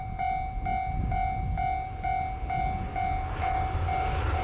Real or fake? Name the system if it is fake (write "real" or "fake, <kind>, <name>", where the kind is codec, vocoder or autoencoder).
real